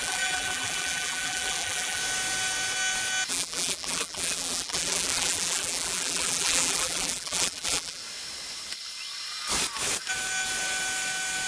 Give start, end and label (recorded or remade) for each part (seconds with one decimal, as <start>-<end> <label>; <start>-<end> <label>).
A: 0.0-2.0 remade; 2.0-3.3 recorded; 3.3-8.0 remade; 8.0-11.5 recorded